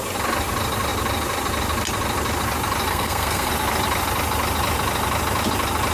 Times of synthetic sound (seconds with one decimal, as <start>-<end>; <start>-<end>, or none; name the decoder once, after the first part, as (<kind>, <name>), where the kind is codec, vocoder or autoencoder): 2.9-3.5 (codec, SNAC)